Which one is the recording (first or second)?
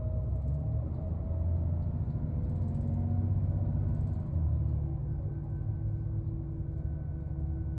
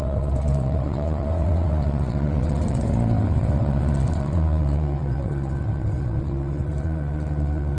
first